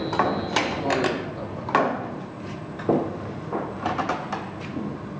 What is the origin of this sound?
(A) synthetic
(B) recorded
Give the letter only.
B